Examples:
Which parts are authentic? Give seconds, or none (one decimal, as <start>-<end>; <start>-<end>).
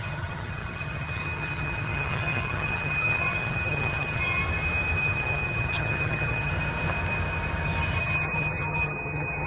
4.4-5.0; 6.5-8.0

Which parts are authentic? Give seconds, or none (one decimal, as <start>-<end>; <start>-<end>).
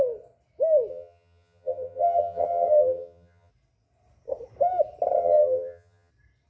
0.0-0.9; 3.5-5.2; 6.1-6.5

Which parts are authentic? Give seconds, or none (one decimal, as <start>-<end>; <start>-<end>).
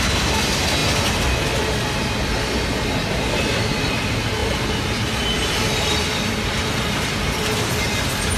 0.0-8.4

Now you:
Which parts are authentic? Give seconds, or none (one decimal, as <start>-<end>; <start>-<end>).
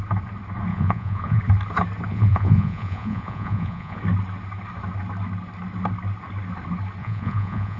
0.0-0.7; 1.4-2.1; 4.0-7.0